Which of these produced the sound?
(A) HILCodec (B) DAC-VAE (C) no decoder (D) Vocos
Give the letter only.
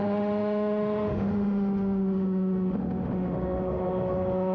B